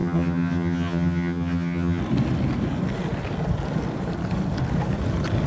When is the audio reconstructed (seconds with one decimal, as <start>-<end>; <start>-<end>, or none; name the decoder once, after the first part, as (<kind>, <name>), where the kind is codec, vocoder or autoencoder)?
0.0-2.0 (vocoder, HiFi-GAN)